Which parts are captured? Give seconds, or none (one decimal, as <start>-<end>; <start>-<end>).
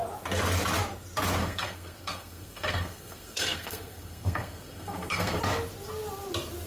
0.0-1.4; 5.4-6.7